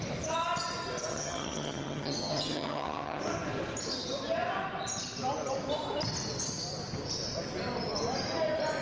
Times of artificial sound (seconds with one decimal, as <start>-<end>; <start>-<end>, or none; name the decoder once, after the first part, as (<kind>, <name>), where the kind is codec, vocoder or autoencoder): 1.1-3.2 (vocoder, HiFi-GAN)